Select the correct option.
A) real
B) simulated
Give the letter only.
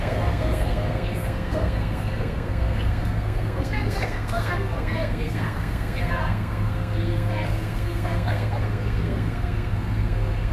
B